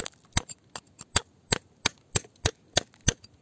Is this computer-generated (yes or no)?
no